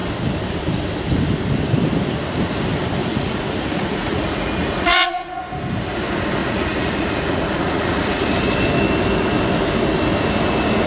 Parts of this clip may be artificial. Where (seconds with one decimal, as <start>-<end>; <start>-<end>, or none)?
3.0-5.4; 6.4-8.3